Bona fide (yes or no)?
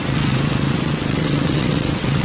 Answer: no